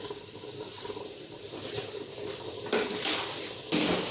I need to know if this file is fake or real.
fake